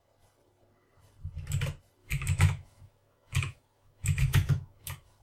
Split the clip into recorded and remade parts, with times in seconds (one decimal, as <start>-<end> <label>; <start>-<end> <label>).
0.0-2.0 recorded; 2.0-5.2 remade